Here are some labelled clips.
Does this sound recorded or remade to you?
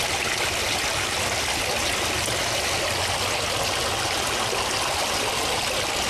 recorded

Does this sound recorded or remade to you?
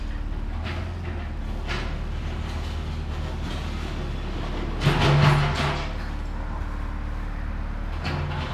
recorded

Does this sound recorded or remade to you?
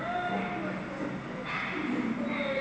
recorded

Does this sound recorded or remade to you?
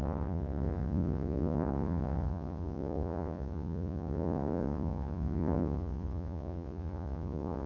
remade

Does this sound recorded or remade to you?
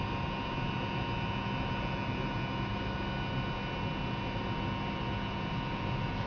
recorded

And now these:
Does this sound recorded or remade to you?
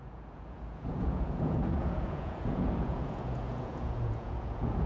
remade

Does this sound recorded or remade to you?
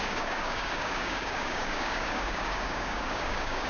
remade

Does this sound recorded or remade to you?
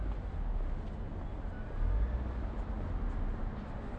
recorded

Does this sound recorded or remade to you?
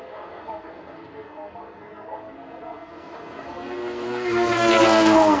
remade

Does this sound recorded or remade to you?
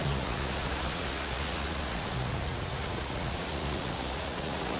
remade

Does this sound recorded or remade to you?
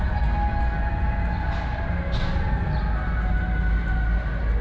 recorded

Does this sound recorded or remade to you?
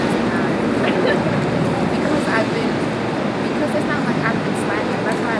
recorded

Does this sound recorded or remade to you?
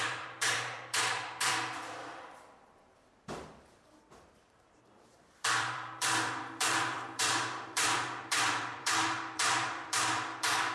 remade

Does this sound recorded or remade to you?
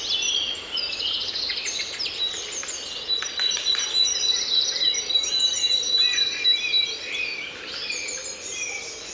remade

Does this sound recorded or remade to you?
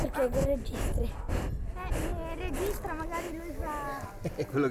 recorded